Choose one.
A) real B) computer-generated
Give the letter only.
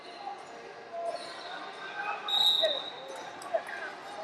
A